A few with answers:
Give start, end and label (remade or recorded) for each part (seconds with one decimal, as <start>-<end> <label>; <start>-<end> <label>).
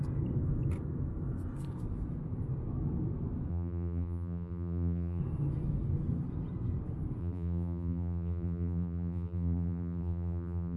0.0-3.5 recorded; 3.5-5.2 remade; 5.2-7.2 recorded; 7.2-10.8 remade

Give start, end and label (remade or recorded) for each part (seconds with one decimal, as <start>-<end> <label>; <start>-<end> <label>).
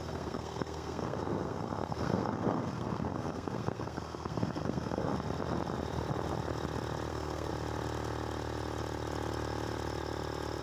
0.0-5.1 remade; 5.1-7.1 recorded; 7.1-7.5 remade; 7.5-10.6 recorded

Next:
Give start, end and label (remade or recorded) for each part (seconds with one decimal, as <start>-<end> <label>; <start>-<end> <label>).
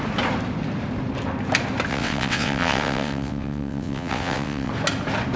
0.0-1.9 recorded; 1.9-4.7 remade; 4.7-5.4 recorded